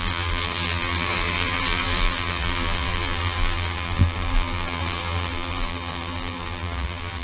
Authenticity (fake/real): fake